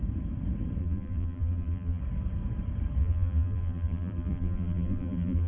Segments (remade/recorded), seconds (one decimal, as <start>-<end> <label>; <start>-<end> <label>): 0.0-0.8 recorded; 0.8-2.0 remade; 2.0-3.0 recorded; 3.0-5.5 remade